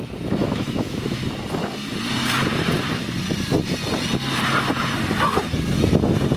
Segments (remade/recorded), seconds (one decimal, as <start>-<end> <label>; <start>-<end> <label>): 0.0-0.4 recorded; 0.4-1.2 remade; 1.2-6.4 recorded